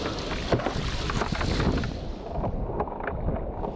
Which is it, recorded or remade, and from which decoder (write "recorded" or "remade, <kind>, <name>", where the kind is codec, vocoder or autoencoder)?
recorded